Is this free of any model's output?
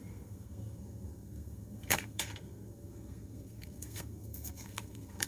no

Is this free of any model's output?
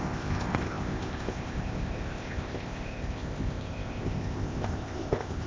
no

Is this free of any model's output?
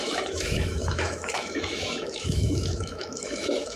no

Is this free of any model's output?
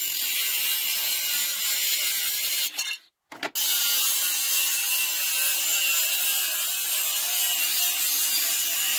yes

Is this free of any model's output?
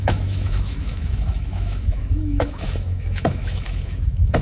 no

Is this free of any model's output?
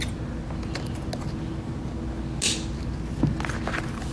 yes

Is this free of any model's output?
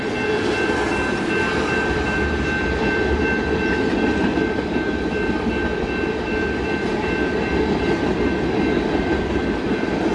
yes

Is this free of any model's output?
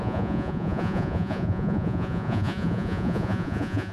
no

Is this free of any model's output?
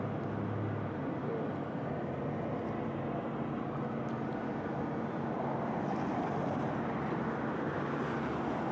yes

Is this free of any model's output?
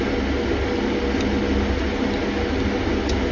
yes